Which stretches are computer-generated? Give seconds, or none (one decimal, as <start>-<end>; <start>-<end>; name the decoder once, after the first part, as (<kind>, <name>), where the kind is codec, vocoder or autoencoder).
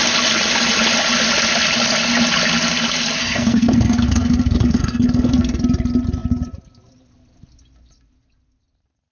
3.2-5.6 (codec, SNAC)